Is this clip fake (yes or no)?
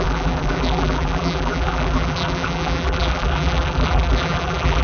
yes